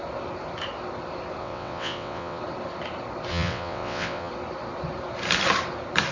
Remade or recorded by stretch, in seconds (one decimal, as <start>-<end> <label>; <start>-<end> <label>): 0.0-1.4 recorded; 1.4-2.4 remade; 2.4-3.3 recorded; 3.3-4.3 remade; 4.3-6.1 recorded